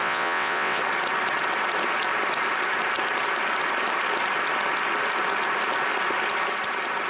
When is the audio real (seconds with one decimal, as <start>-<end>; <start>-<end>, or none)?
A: 0.8-7.1